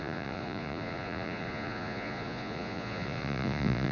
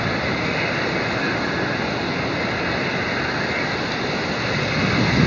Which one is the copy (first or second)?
first